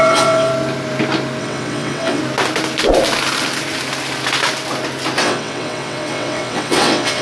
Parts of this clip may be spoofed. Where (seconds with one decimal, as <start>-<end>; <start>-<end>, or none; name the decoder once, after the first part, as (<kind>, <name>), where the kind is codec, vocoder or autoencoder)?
0.0-0.5 (vocoder, WaveNeXt); 1.4-2.2; 5.2-7.2